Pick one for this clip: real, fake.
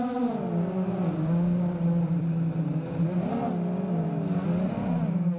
real